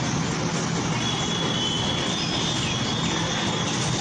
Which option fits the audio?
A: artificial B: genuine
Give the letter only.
B